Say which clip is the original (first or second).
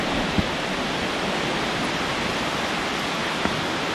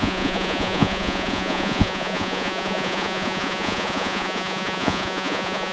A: first